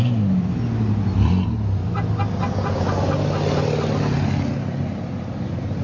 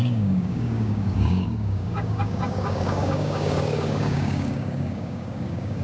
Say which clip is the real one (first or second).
first